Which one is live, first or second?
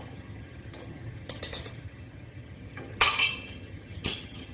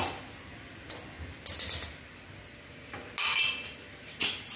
second